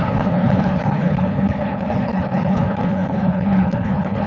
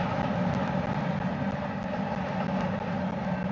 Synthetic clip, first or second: first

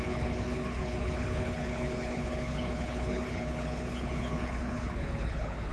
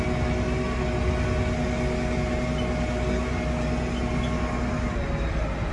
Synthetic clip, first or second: first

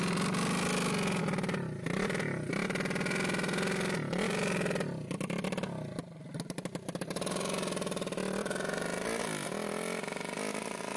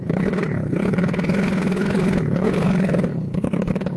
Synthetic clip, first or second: second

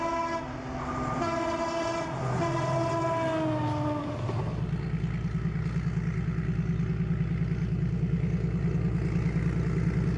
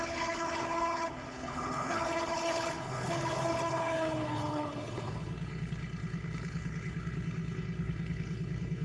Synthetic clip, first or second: second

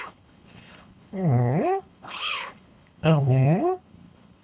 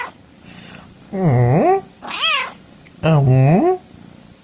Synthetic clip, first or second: first